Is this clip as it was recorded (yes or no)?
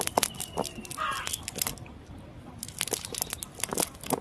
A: yes